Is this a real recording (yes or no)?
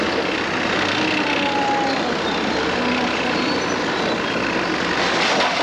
yes